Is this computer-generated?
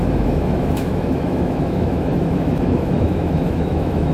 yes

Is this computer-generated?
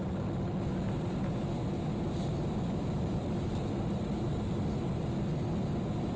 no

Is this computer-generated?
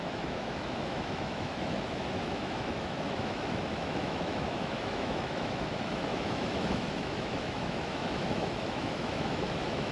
yes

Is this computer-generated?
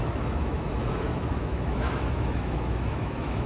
yes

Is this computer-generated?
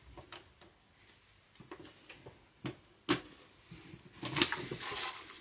no